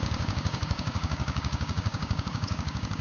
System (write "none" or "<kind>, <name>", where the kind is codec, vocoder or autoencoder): codec, DAC